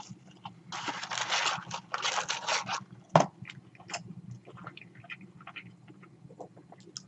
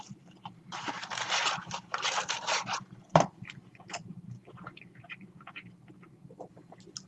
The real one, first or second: first